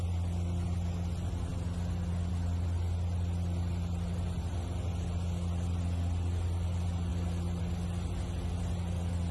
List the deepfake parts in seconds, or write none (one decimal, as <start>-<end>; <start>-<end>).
none